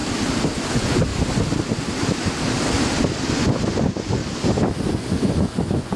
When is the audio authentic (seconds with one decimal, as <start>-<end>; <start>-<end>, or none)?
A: 0.0-0.7; 1.1-3.3; 4.2-4.9